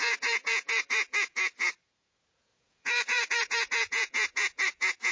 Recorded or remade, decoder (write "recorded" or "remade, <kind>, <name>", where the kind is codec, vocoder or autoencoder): remade, vocoder, Vocos